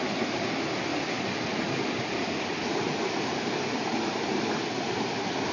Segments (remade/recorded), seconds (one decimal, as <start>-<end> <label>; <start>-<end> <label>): 0.0-5.5 recorded

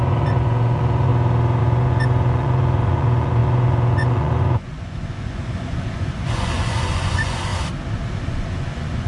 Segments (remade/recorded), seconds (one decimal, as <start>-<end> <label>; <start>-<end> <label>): 0.0-1.1 remade; 1.1-1.6 recorded; 1.6-7.5 remade; 7.5-8.3 recorded; 8.3-9.1 remade

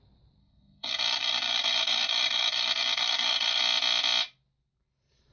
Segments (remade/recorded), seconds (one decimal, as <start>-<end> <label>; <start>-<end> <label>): 0.0-0.4 recorded; 0.4-3.6 remade; 3.6-5.3 recorded

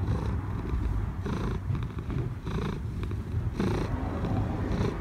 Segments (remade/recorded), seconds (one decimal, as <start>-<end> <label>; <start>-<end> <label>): 0.0-3.0 remade; 3.0-5.0 recorded

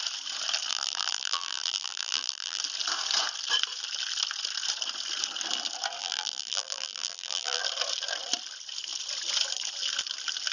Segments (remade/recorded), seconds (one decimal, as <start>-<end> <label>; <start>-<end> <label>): 0.0-0.7 recorded; 0.7-2.6 remade; 2.6-6.0 recorded; 6.0-7.6 remade; 7.6-10.5 recorded

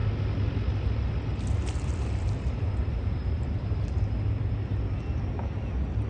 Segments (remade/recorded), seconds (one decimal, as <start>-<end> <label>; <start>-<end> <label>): 0.0-2.9 recorded; 2.9-3.7 remade; 3.7-6.1 recorded

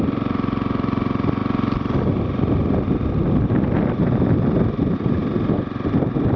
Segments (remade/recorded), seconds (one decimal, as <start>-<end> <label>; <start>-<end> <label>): 0.0-6.4 recorded

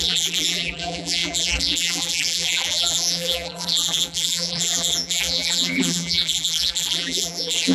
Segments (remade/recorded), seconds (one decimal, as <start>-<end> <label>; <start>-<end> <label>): 0.0-7.7 remade